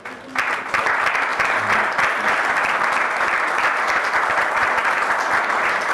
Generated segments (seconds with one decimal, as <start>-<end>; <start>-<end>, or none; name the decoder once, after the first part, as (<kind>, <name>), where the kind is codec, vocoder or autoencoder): none